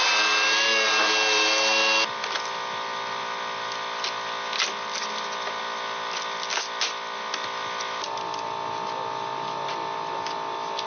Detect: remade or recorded recorded